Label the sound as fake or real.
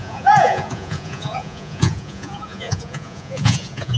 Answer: fake